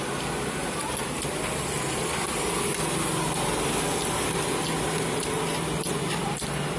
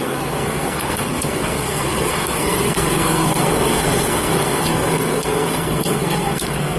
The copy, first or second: second